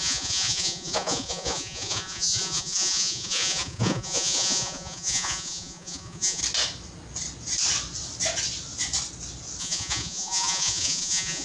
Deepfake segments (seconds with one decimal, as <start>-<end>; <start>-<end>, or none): 0.0-6.4; 9.6-11.4